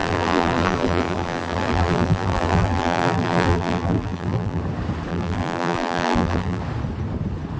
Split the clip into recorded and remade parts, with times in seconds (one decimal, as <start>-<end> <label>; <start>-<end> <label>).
0.0-4.6 remade; 4.6-5.1 recorded; 5.1-6.6 remade; 6.6-7.6 recorded